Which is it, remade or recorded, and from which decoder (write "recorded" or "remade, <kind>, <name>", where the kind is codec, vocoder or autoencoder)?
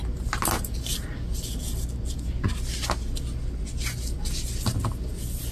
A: recorded